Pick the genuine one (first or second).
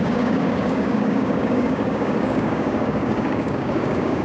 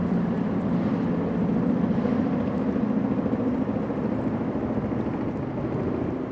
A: second